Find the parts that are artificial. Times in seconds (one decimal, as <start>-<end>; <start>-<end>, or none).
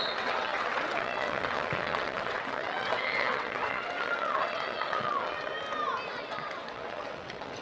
0.0-5.5; 6.1-7.6